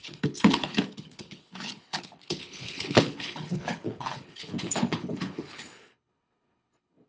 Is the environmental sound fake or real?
fake